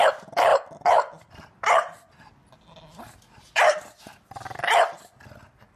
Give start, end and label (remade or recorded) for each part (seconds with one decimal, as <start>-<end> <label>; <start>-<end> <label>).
0.0-5.8 recorded